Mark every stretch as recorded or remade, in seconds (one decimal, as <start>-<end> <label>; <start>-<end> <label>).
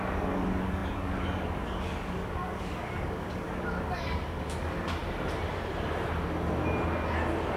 0.0-5.0 remade; 5.0-7.6 recorded